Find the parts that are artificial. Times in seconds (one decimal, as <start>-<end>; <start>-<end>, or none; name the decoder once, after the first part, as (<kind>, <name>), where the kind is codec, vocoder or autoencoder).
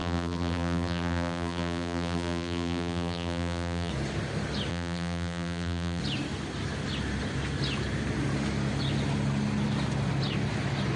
0.0-3.9 (vocoder, BigVGAN v2); 4.7-6.0